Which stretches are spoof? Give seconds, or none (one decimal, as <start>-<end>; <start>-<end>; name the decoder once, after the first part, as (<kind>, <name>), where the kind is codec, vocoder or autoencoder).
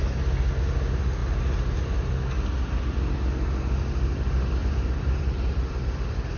1.2-2.1 (vocoder, BigVGAN v2); 4.6-5.8